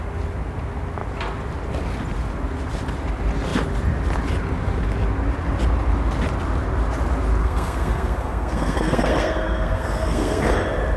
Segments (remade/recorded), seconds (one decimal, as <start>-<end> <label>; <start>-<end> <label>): 0.0-7.4 recorded; 7.4-10.4 remade; 10.4-11.0 recorded